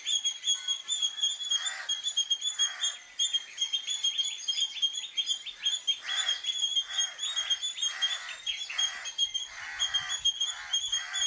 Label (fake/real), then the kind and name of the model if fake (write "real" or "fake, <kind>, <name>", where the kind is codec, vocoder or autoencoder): real